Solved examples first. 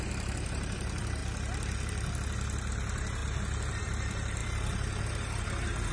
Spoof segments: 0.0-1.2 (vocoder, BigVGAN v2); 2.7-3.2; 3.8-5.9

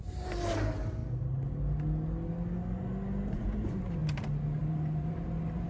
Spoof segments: 0.0-1.0 (vocoder, BigVGAN v2); 3.3-4.0; 4.6-5.7

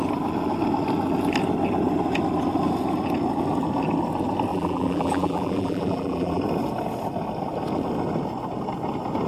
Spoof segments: 4.5-6.4 (vocoder, BigVGAN v2)

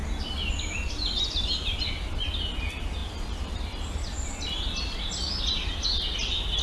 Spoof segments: 0.0-2.2 (vocoder, BigVGAN v2); 3.0-5.4

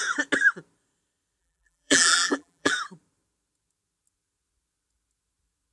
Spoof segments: 1.4-2.7 (vocoder, BigVGAN v2)

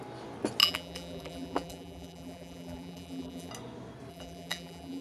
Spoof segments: 0.6-3.5 (vocoder, BigVGAN v2); 4.1-5.0

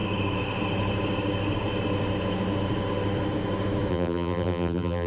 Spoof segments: 3.9-5.1 (vocoder, BigVGAN v2)

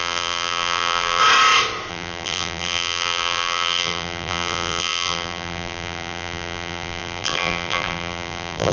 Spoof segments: 0.0-1.2 (vocoder, BigVGAN v2); 1.9-8.7